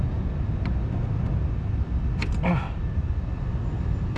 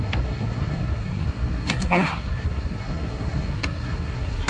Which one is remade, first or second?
second